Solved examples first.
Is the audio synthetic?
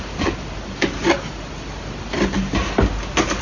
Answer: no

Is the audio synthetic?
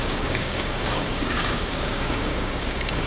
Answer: yes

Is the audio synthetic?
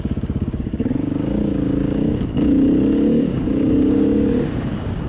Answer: yes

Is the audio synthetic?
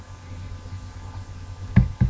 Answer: yes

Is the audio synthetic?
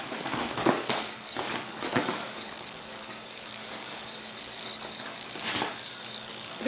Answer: yes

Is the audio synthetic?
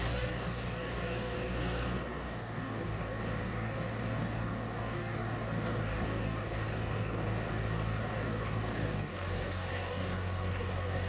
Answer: yes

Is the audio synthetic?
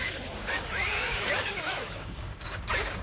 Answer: yes